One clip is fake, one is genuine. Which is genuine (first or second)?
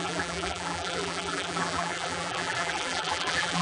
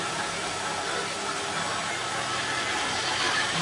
second